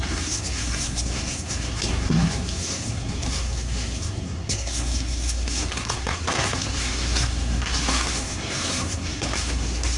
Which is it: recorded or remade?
remade